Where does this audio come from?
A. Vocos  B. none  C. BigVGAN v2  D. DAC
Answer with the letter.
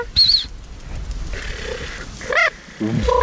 B